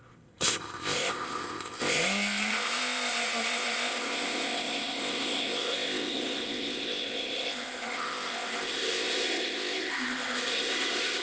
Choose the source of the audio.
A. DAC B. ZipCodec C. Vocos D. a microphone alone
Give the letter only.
B